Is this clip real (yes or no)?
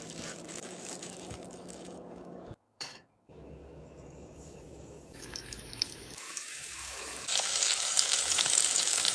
no